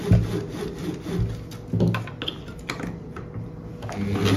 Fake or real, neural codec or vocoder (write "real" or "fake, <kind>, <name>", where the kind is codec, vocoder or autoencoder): real